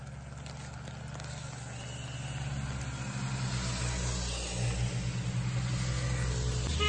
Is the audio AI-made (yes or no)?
no